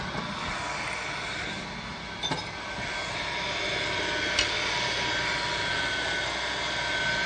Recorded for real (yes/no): yes